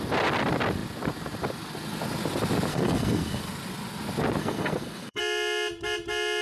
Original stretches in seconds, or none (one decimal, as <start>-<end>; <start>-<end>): 0.0-2.7; 3.4-4.4; 5.2-6.4